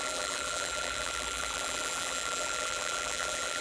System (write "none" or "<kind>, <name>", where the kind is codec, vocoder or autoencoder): vocoder, BigVGAN v2